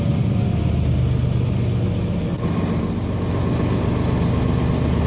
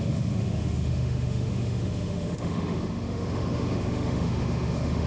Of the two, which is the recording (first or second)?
first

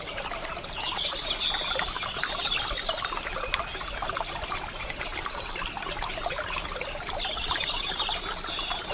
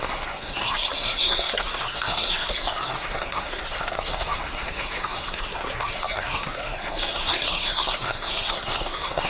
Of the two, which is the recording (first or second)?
first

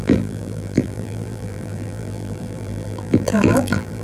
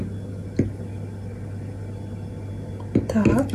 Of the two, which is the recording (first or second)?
second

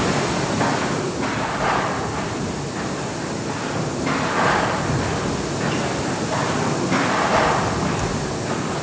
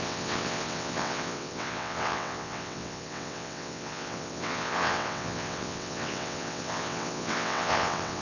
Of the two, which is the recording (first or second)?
first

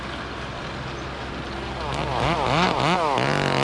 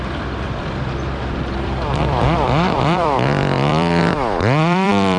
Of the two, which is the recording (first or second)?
first